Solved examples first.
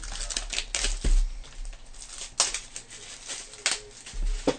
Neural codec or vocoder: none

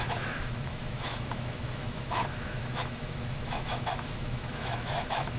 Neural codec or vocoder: autoencoder, DAC-VAE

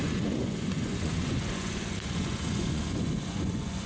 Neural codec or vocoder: vocoder, Vocos